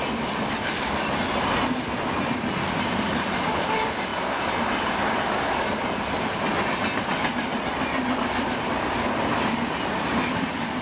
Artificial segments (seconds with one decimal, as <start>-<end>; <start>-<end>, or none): 0.0-4.1; 8.7-10.8